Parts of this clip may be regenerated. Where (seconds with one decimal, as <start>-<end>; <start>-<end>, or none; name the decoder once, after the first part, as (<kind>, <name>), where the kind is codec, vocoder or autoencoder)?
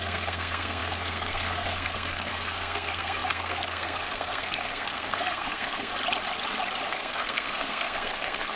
0.0-5.9 (codec, SNAC); 6.9-8.6